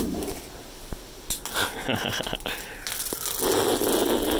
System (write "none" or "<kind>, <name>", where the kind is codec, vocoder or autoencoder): none